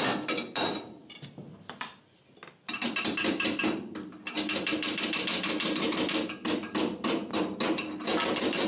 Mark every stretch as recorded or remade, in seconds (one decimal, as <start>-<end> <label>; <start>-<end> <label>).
0.0-4.1 recorded; 4.1-5.2 remade; 5.2-8.7 recorded